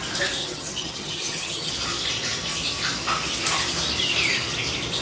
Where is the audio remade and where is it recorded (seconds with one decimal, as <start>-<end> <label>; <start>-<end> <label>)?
0.0-0.4 recorded; 0.4-1.7 remade; 1.7-5.0 recorded